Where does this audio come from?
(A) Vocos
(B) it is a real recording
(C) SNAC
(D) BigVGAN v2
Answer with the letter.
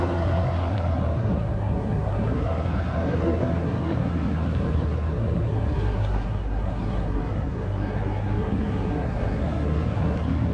C